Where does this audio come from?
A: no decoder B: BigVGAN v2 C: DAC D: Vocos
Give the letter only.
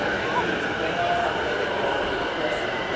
A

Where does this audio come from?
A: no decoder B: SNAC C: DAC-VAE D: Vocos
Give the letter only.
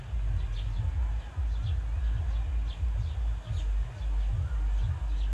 A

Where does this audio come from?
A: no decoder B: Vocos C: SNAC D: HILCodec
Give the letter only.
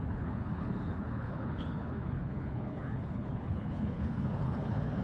D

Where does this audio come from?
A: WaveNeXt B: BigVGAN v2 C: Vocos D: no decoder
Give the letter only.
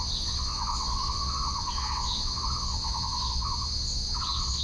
A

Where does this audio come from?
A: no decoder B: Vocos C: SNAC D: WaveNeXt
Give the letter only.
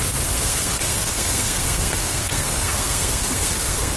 C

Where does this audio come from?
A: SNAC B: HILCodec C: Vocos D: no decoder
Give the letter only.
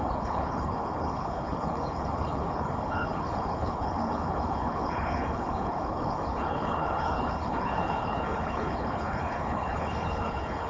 B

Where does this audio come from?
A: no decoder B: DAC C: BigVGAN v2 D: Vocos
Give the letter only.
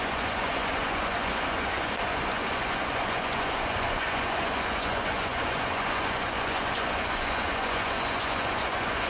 D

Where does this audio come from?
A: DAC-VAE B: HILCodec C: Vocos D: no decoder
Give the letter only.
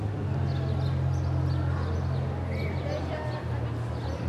D